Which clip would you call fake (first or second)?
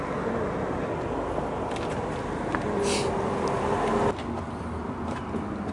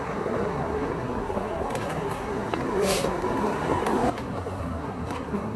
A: second